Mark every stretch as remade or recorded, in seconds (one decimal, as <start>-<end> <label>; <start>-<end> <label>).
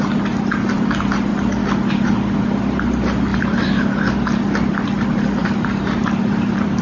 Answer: 0.0-3.3 recorded; 3.3-3.9 remade; 3.9-5.4 recorded; 5.4-6.8 remade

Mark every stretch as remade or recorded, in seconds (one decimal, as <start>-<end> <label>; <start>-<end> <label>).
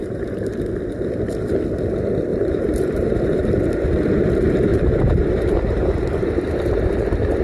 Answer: 0.0-0.7 remade; 0.7-2.3 recorded; 2.3-3.5 remade; 3.5-4.7 recorded; 4.7-7.4 remade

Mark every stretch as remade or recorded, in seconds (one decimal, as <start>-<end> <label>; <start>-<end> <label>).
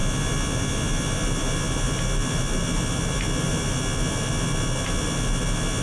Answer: 0.0-5.8 recorded